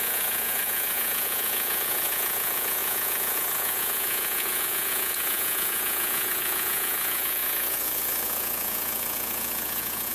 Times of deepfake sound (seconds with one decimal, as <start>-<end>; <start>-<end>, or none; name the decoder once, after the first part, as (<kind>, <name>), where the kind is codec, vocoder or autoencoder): 0.0-10.1 (vocoder, Vocos)